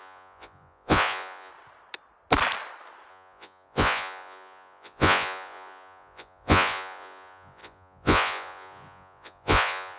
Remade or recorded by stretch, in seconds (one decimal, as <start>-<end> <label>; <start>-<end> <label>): 0.0-1.5 remade; 1.5-3.1 recorded; 3.1-10.0 remade